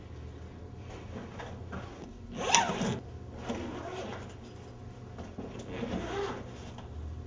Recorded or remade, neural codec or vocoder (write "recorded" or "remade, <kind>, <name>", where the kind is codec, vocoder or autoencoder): recorded